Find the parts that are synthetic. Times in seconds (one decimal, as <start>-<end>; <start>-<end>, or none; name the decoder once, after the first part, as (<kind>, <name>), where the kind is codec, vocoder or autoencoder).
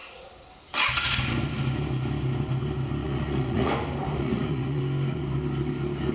3.0-3.7 (vocoder, Vocos); 4.2-4.8